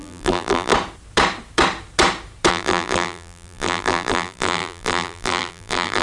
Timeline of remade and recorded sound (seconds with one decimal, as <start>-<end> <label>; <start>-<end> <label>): 0.0-0.7 remade; 0.7-2.5 recorded; 2.5-6.0 remade